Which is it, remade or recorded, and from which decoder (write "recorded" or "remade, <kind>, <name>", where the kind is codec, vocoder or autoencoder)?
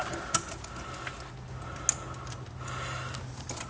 recorded